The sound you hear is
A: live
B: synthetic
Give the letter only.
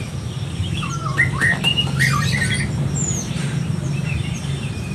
B